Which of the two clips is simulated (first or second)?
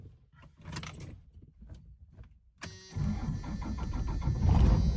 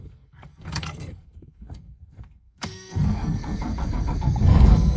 second